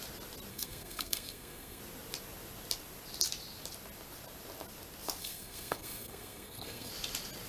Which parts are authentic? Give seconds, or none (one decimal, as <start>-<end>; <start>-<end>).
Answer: 0.0-0.5; 1.8-5.2; 6.9-7.5